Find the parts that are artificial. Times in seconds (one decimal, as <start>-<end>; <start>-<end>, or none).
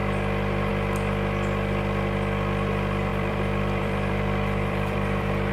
3.1-5.5